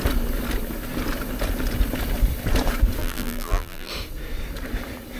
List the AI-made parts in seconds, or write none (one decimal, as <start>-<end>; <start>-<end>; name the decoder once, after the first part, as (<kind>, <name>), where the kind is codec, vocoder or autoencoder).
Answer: 3.0-3.9 (vocoder, BigVGAN v2)